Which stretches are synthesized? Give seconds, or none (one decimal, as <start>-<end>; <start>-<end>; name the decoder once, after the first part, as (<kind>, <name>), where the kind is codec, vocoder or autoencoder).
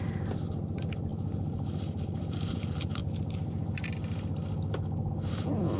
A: none